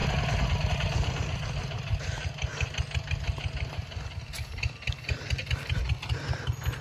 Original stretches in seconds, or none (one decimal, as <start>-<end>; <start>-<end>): 0.0-6.8